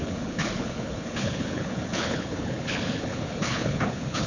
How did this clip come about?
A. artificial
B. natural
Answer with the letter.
A